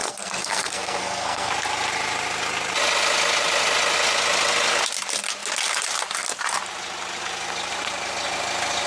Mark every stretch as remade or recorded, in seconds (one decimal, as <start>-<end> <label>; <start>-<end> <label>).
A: 0.0-1.5 remade; 1.5-8.9 recorded